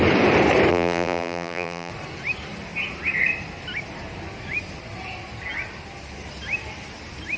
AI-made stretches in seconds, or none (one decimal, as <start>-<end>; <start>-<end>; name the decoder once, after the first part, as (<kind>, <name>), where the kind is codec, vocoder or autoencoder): 0.7-1.9 (vocoder, BigVGAN v2)